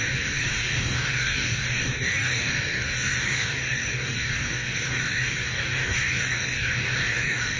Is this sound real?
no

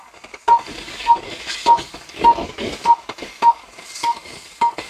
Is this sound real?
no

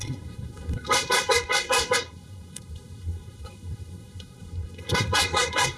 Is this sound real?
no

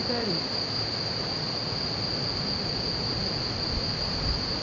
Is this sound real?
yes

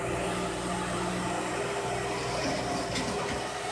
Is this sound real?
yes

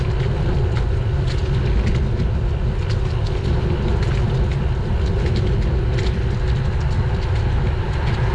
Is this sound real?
yes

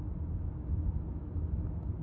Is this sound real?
yes